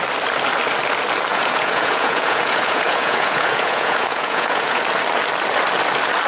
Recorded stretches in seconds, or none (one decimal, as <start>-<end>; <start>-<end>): 0.0-1.3; 4.8-6.3